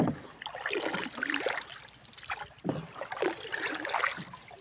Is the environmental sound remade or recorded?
recorded